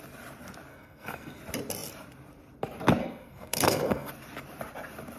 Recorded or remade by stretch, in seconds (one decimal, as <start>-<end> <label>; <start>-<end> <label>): 0.0-0.7 recorded; 0.7-1.4 remade; 1.4-3.0 recorded; 3.0-4.1 remade; 4.1-5.2 recorded